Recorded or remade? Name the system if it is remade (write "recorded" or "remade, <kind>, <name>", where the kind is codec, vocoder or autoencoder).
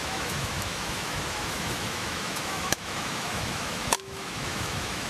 remade, autoencoder, DAC-VAE